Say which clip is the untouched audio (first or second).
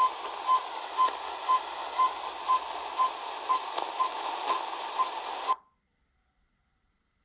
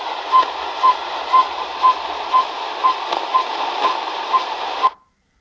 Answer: first